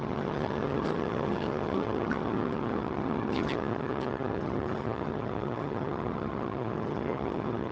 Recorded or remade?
remade